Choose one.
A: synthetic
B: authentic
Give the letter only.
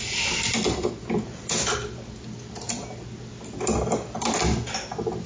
B